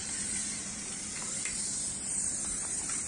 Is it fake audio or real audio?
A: fake